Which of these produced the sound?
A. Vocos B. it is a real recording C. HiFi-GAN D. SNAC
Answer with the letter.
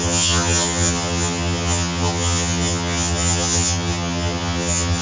C